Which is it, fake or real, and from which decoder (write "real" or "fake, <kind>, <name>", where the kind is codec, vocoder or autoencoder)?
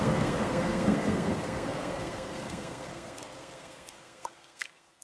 fake, codec, SNAC